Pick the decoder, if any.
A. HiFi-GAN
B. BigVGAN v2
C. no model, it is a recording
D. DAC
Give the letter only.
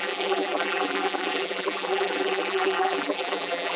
B